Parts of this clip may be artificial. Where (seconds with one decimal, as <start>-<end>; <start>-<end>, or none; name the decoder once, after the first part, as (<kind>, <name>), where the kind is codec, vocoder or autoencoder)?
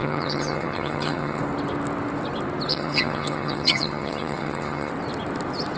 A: 0.0-1.4 (vocoder, HiFi-GAN); 2.7-4.9